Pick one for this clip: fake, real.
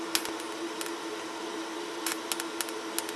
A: real